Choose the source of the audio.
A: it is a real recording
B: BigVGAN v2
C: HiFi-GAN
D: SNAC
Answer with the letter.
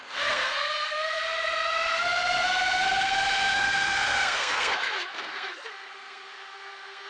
D